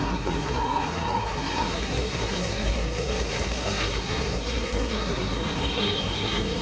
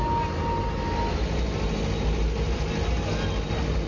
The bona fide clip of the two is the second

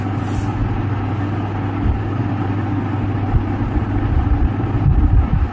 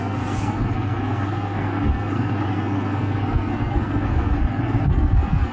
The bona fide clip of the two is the first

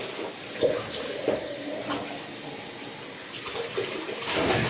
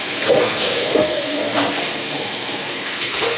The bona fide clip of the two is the first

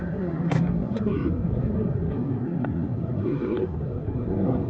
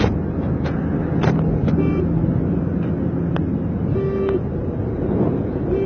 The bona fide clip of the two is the second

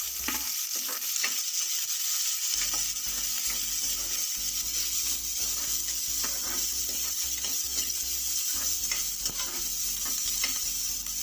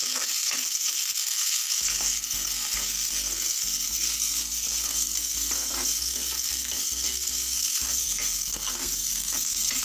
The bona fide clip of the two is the first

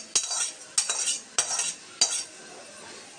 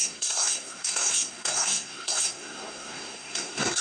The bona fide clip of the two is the first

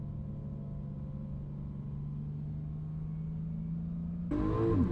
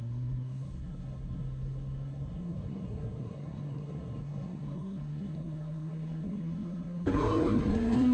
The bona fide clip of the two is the first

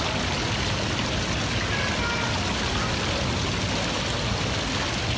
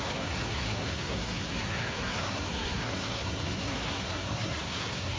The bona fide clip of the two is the first